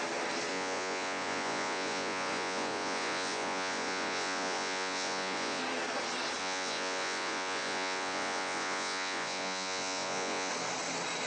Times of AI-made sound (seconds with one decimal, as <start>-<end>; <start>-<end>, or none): 0.5-5.6; 6.4-10.5